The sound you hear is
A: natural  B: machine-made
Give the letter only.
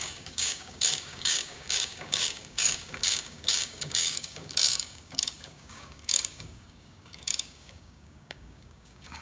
B